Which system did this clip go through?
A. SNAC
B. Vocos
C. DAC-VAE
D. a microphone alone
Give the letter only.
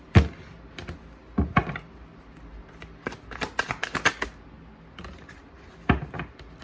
D